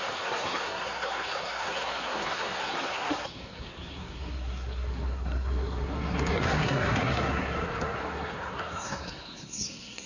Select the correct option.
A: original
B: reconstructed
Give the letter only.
B